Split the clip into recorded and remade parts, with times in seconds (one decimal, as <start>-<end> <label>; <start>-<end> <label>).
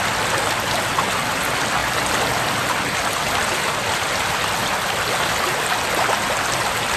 0.0-1.8 recorded; 1.8-4.1 remade; 4.1-4.6 recorded; 4.6-5.6 remade; 5.6-7.0 recorded